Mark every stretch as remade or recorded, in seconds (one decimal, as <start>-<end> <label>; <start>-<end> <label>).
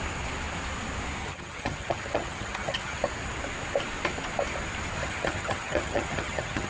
0.0-1.2 recorded; 1.2-3.0 remade; 3.0-5.0 recorded; 5.0-6.7 remade